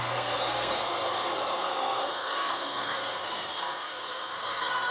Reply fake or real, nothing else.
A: fake